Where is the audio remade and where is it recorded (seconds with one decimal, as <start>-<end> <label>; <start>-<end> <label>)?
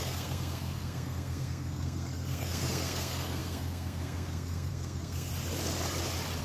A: 0.0-5.3 remade; 5.3-6.4 recorded